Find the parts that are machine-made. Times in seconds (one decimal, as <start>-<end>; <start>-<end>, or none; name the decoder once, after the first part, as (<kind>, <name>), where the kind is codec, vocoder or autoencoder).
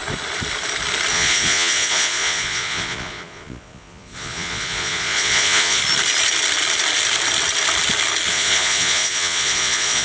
1.1-5.8 (vocoder, Vocos); 8.3-10.0